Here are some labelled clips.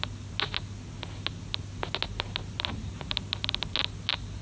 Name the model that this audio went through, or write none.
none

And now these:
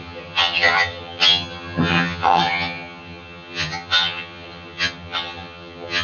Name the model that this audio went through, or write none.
vocoder, HiFi-GAN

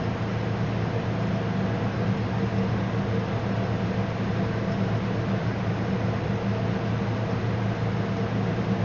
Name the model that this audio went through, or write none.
none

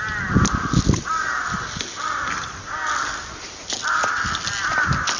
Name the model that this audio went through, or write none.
none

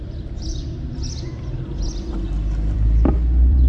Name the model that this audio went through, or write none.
vocoder, BigVGAN v2